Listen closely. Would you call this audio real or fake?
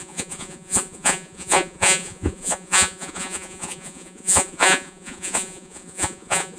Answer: fake